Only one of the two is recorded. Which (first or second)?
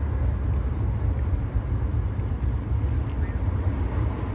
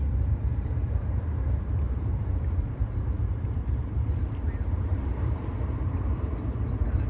first